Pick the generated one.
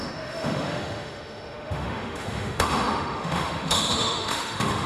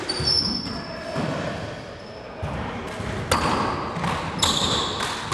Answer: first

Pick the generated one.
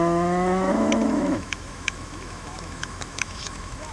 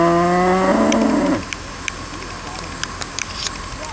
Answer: first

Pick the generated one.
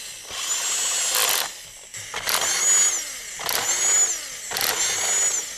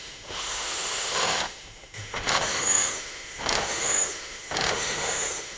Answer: second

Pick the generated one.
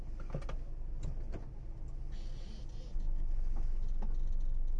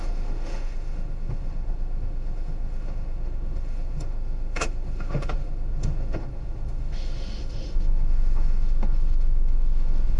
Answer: second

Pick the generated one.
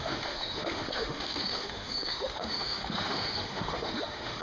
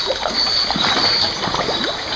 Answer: first